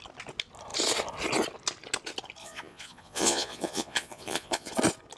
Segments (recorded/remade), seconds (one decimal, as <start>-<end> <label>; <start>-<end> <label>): 0.0-2.4 recorded; 2.4-4.7 remade; 4.7-5.2 recorded